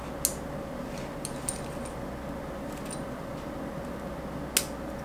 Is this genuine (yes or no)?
yes